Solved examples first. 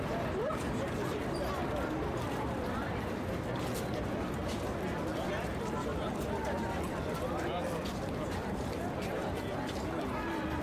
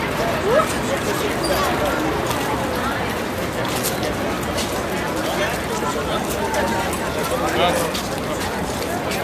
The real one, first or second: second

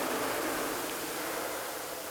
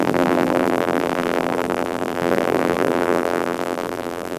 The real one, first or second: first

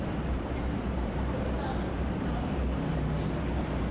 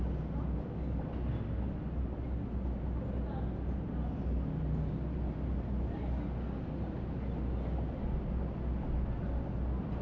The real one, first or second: second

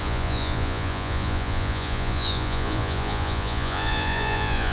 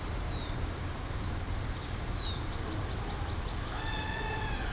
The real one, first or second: second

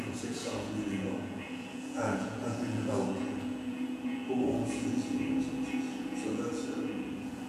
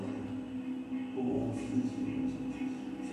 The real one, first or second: second